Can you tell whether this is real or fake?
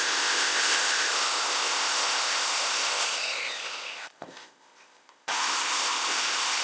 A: fake